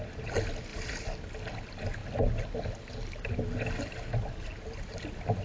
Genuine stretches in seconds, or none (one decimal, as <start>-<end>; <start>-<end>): 0.0-5.4